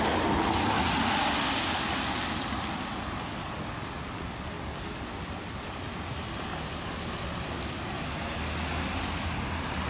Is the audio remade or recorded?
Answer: recorded